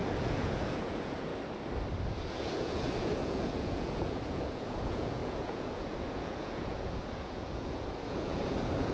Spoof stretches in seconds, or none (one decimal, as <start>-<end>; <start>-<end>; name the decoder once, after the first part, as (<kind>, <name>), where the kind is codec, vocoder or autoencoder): 0.0-1.3 (vocoder, Vocos); 2.2-8.9